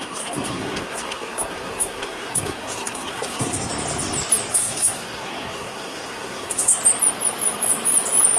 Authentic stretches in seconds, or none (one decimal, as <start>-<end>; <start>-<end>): 3.7-4.5; 6.8-8.4